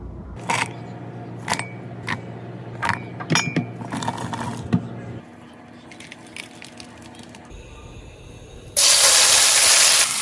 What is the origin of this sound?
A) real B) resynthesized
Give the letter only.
A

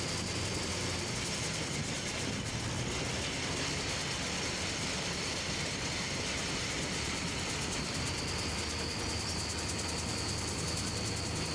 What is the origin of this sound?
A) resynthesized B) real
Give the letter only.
B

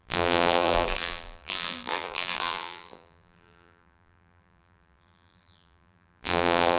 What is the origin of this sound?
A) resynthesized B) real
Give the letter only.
A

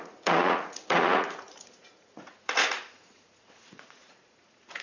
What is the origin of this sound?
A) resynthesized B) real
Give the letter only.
A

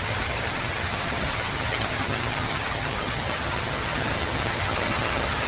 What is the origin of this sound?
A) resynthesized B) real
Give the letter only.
A